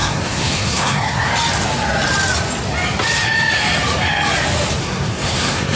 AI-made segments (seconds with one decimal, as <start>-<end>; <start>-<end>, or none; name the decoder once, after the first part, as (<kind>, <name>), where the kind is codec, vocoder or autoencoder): 0.0-1.3 (codec, SNAC); 4.8-5.8